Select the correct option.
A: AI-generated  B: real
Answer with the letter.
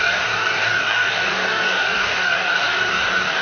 A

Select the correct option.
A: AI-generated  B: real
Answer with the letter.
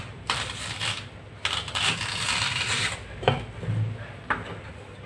B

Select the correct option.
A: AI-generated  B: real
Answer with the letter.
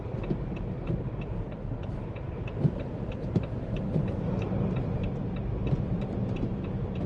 A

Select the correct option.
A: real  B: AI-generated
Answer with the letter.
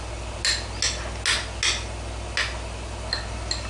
A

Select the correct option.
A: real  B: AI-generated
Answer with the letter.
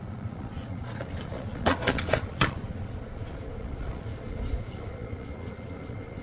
B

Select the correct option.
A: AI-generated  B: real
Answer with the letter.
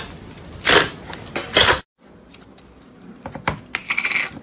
B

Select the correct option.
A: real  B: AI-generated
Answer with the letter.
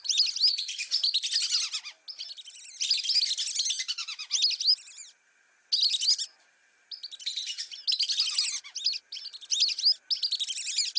A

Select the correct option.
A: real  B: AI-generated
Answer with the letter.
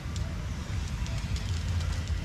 A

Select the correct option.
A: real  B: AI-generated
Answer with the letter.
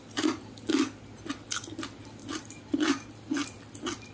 A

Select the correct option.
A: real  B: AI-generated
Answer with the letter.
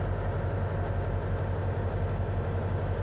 A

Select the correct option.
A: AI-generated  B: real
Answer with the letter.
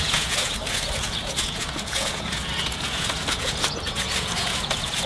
A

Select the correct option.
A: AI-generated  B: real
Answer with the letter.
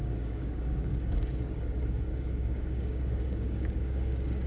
A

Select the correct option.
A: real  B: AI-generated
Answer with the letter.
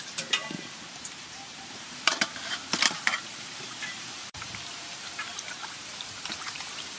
B